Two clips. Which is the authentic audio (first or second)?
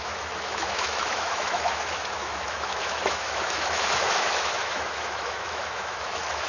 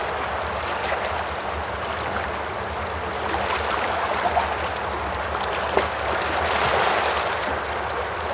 second